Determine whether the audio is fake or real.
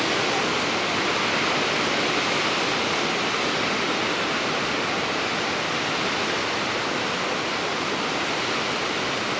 real